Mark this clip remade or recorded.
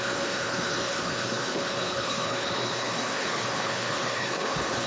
remade